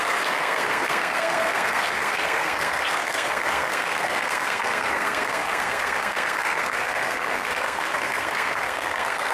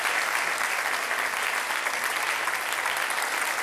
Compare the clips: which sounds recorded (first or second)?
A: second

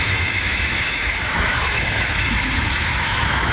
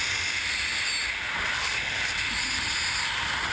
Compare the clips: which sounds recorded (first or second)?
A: second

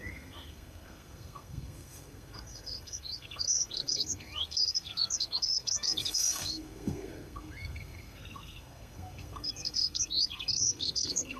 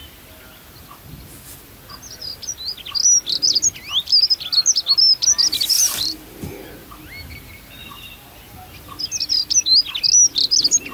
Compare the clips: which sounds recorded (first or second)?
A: second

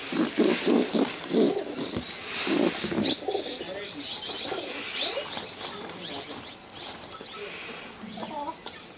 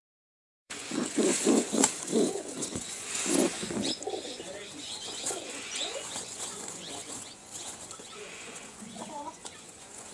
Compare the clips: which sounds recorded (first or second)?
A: first